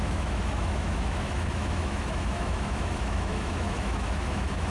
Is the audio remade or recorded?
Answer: remade